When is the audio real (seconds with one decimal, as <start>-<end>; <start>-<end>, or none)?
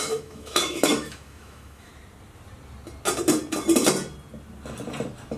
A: 1.9-5.4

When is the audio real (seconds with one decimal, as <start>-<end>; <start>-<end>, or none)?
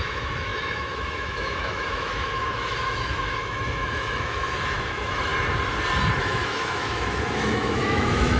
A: 5.3-6.2